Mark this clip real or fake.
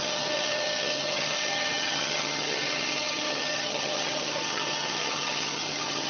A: fake